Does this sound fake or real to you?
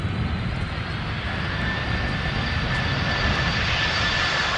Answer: real